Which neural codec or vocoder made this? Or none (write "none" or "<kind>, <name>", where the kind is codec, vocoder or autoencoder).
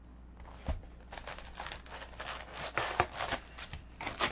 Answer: none